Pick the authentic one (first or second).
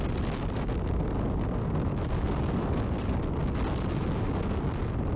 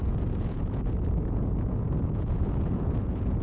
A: first